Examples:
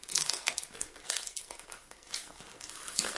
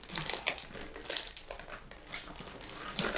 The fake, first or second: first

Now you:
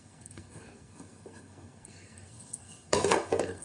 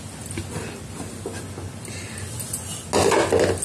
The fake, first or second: first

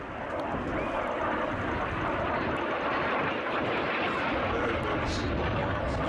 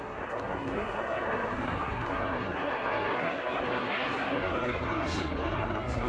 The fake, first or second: second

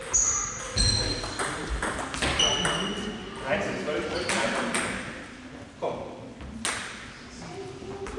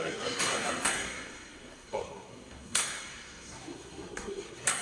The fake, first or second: second